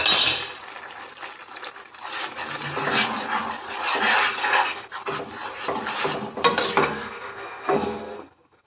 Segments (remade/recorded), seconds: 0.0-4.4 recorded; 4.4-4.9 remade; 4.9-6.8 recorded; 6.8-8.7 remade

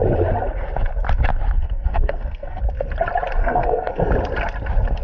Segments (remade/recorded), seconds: 0.0-1.6 recorded; 1.6-2.6 remade; 2.6-3.4 recorded; 3.4-4.1 remade; 4.1-5.0 recorded

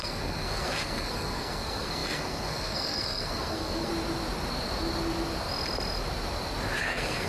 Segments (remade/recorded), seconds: 0.0-3.9 remade; 3.9-6.8 recorded; 6.8-7.3 remade

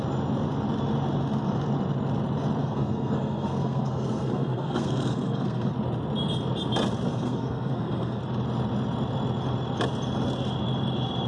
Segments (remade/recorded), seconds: 0.0-2.6 recorded; 2.6-5.7 remade; 5.7-7.1 recorded; 7.1-8.2 remade; 8.2-11.3 recorded